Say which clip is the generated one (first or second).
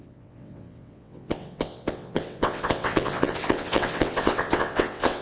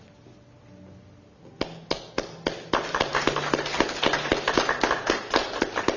first